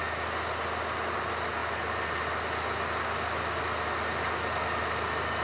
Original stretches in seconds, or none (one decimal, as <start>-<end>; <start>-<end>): 0.0-5.4